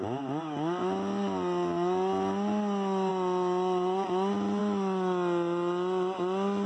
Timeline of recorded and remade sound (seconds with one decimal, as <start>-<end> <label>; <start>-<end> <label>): 0.0-6.7 recorded